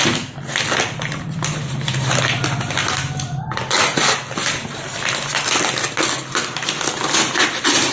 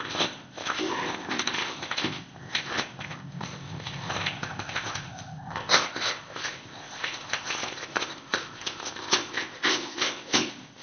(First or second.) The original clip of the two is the first